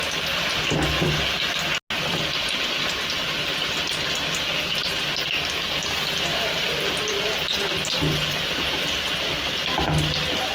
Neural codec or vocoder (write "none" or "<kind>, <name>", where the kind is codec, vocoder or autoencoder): none